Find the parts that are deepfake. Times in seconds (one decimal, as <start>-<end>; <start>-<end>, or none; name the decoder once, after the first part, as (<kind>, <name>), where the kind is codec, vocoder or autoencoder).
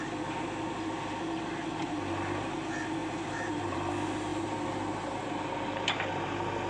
3.0-3.9 (vocoder, BigVGAN v2); 4.3-5.4